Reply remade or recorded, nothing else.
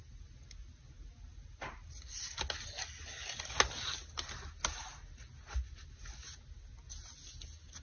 recorded